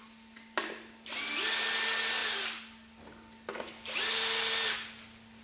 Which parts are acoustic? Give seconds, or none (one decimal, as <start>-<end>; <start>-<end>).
0.0-5.4